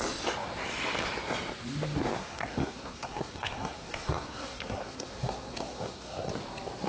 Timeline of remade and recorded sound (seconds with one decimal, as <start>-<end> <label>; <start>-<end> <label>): 0.0-2.2 recorded; 2.2-6.3 remade; 6.3-6.9 recorded

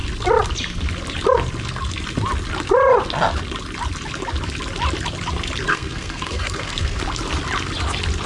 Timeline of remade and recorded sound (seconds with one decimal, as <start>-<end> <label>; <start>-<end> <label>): 0.0-5.7 recorded; 5.7-7.0 remade; 7.0-8.3 recorded

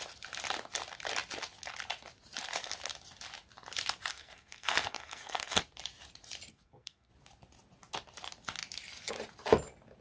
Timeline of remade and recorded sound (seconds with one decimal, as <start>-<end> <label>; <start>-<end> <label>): 0.0-4.1 recorded; 4.1-5.6 remade; 5.6-6.5 recorded; 6.5-7.1 remade; 7.1-10.0 recorded